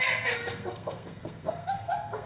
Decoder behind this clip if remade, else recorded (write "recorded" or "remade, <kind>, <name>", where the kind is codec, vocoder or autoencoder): remade, codec, SNAC